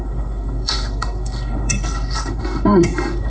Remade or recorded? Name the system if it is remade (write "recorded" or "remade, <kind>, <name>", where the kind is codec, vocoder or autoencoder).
remade, codec, SNAC